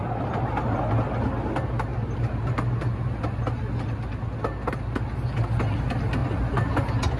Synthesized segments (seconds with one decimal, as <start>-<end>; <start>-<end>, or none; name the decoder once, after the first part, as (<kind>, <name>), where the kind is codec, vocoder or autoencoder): none